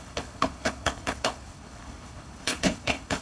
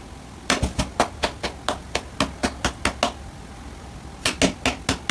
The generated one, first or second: first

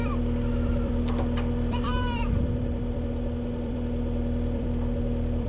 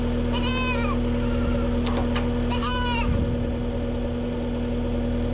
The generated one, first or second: first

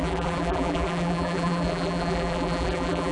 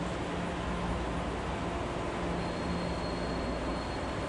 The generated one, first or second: first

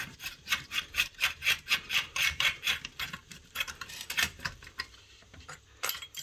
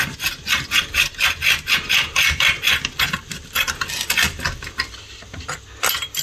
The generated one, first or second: first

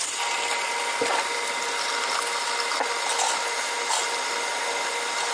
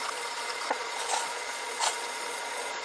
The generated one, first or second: second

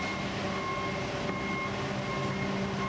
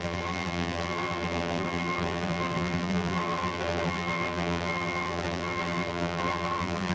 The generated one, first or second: second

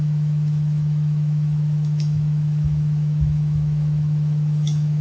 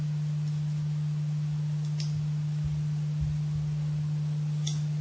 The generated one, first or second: first